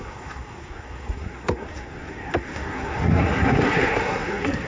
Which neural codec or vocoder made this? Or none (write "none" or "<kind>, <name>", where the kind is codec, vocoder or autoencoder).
codec, SNAC